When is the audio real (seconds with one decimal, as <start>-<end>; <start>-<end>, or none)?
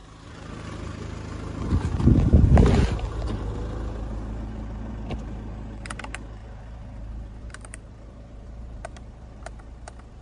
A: 0.0-6.4